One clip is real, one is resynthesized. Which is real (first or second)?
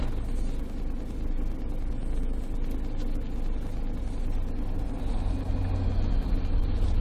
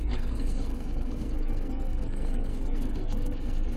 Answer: first